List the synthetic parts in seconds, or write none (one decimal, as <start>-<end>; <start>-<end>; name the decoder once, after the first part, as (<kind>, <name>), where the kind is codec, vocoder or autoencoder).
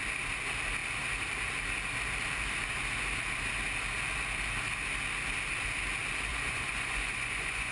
6.3-7.7 (vocoder, Vocos)